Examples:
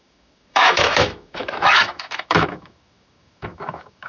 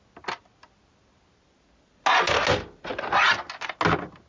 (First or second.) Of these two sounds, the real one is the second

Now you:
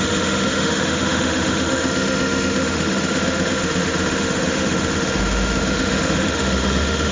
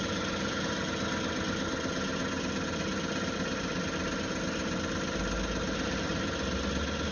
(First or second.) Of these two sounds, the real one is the second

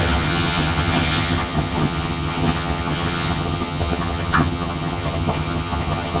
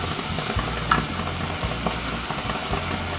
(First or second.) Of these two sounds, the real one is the second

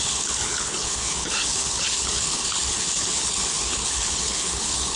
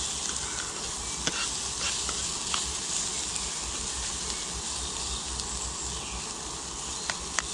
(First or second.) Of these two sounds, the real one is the second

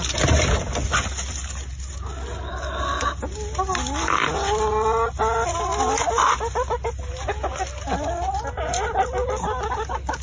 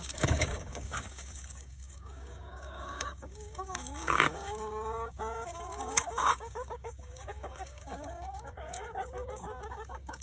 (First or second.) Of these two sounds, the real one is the first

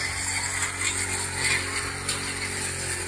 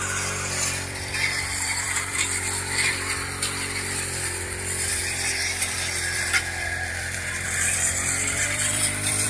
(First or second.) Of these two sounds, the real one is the first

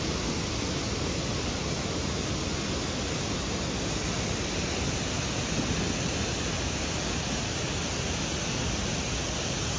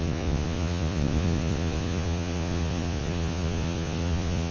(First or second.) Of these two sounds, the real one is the first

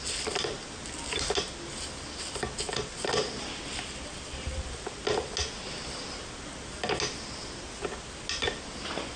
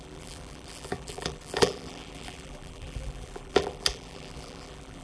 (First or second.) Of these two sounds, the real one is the first